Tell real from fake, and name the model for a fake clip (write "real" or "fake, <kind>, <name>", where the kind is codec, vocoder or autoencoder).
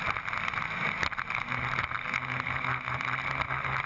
real